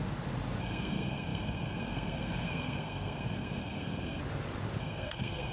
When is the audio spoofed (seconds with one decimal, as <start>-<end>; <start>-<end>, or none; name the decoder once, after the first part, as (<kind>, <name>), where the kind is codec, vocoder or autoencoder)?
0.6-4.2 (codec, SNAC); 4.8-5.5